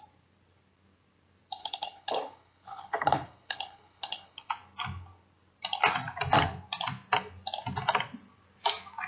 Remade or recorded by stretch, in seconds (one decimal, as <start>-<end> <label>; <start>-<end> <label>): 0.0-1.6 recorded; 1.6-4.5 remade; 4.5-9.1 recorded